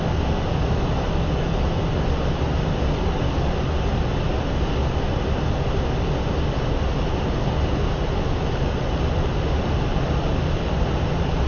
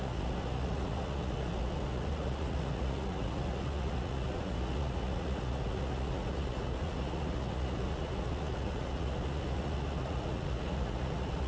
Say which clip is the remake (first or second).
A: second